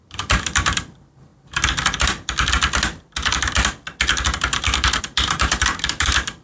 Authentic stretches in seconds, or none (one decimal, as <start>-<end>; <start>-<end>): 1.3-5.0